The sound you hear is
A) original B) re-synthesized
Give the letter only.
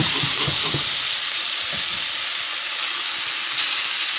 A